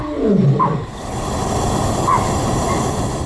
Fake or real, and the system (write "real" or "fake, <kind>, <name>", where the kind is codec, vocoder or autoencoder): real